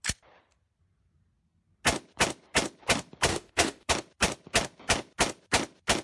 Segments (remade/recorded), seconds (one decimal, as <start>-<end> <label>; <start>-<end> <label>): 0.0-3.3 recorded; 3.3-3.9 remade; 3.9-6.0 recorded